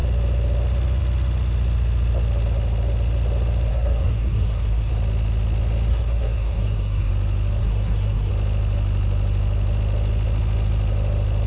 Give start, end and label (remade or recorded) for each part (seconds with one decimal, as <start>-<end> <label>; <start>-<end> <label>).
0.0-3.7 recorded; 3.7-4.9 remade; 4.9-5.9 recorded; 5.9-7.1 remade; 7.1-7.6 recorded; 7.6-8.3 remade; 8.3-11.5 recorded